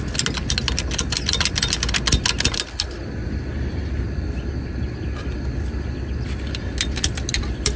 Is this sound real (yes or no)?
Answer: yes